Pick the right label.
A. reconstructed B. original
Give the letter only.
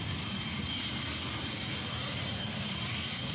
B